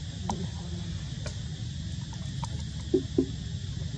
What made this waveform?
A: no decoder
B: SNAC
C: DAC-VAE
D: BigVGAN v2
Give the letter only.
A